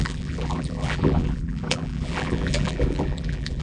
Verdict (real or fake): fake